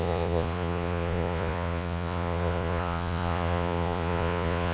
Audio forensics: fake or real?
fake